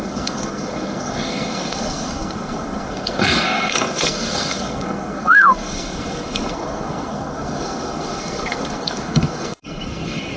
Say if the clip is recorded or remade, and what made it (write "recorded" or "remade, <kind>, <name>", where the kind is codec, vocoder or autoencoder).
remade, codec, SNAC